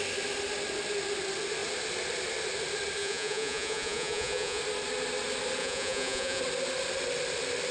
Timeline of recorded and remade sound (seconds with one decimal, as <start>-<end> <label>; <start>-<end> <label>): 0.0-3.0 recorded; 3.0-4.6 remade; 4.6-5.6 recorded; 5.6-6.4 remade; 6.4-7.7 recorded